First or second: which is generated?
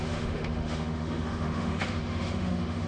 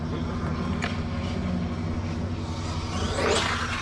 first